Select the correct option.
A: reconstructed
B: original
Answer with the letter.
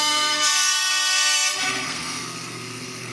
A